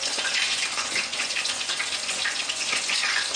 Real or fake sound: fake